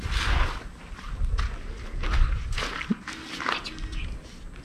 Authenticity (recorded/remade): recorded